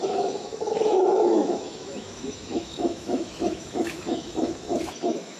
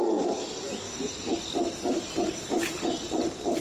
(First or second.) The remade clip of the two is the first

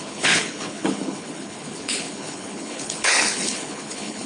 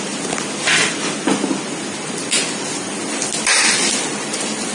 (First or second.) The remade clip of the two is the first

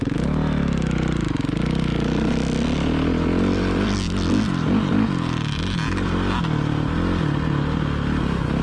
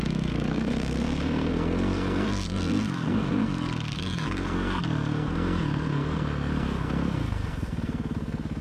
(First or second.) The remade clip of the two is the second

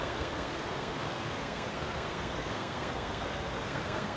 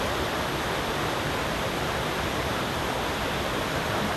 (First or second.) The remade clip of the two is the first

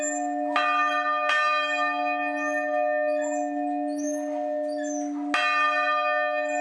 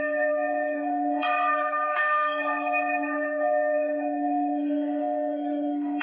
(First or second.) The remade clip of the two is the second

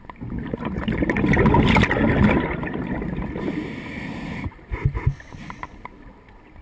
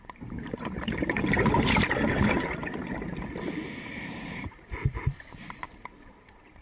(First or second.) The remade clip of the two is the second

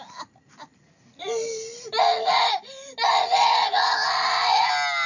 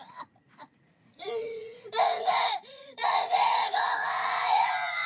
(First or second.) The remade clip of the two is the second